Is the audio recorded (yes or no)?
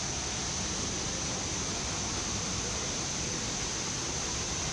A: yes